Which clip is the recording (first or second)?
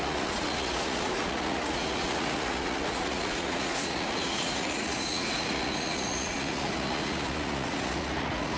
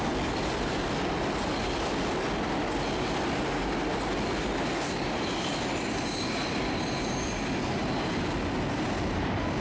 second